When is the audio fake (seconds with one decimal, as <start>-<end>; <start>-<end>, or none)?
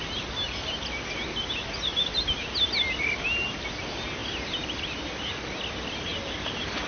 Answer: none